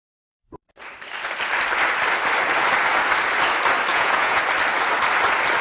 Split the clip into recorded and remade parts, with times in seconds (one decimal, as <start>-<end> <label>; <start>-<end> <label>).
0.0-3.9 recorded; 3.9-4.4 remade; 4.4-5.6 recorded